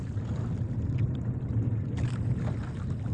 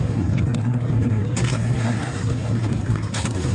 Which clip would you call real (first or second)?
first